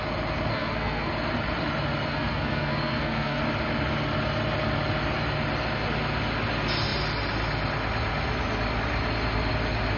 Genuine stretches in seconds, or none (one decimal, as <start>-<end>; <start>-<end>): 0.0-0.5; 1.1-2.1; 3.4-10.0